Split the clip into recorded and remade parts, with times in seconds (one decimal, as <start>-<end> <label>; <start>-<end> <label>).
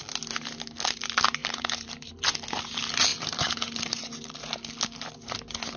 0.0-1.4 recorded; 1.4-2.1 remade; 2.1-3.1 recorded; 3.1-4.0 remade; 4.0-5.8 recorded